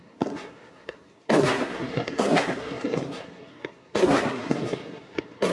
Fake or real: fake